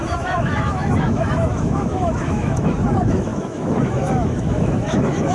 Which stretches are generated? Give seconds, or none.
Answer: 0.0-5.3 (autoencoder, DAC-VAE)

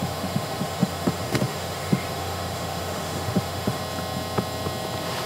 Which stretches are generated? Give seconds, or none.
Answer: 0.0-3.8 (autoencoder, DAC-VAE)

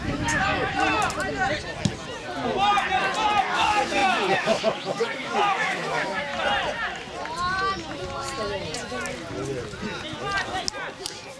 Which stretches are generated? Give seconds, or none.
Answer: 0.0-0.7 (autoencoder, DAC-VAE); 3.4-6.3